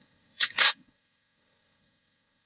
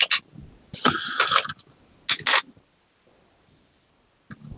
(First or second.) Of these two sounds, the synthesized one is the first